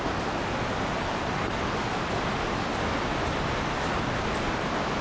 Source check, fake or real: real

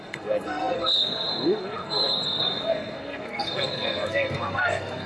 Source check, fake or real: fake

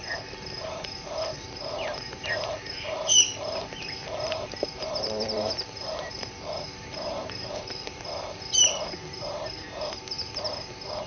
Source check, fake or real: fake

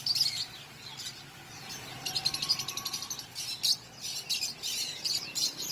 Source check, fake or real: real